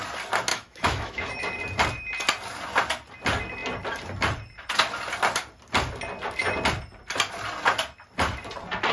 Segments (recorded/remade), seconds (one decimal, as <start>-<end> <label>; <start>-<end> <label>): 0.0-0.5 recorded; 0.5-1.3 remade; 1.3-8.9 recorded